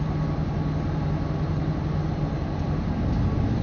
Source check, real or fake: real